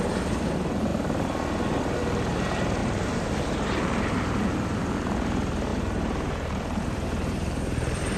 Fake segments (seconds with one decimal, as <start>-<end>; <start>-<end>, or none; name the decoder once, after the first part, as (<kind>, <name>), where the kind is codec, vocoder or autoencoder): 2.8-4.8 (vocoder, BigVGAN v2); 5.7-8.2